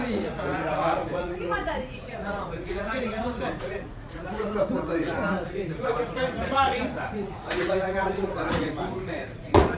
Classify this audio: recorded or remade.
remade